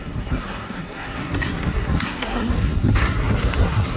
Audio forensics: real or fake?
fake